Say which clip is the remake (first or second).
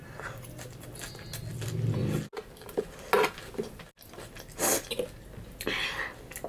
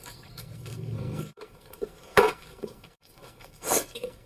second